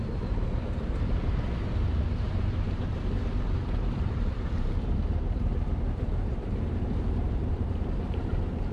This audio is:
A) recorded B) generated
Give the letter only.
B